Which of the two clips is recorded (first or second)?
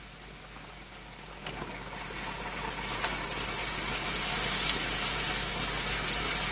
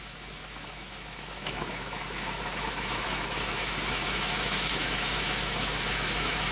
first